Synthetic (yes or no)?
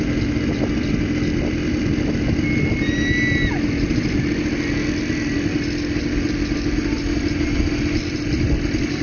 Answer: no